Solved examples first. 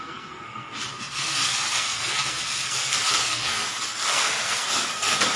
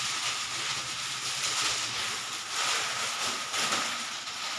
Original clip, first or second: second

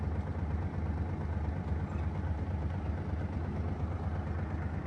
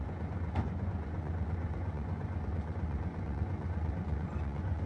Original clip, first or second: first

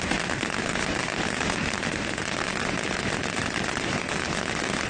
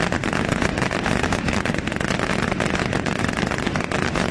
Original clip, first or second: first